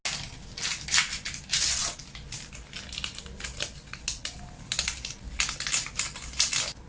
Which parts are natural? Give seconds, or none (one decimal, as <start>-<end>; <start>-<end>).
0.0-6.9